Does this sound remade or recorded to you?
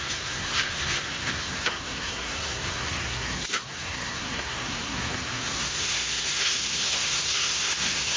remade